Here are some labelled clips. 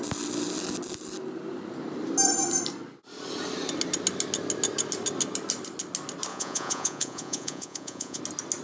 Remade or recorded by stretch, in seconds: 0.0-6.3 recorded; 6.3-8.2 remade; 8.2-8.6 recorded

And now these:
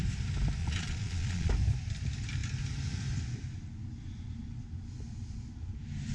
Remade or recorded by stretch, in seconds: 0.0-0.6 recorded; 0.6-1.5 remade; 1.5-6.1 recorded

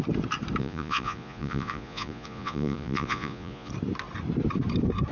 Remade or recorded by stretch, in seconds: 0.0-0.6 recorded; 0.6-3.7 remade; 3.7-5.1 recorded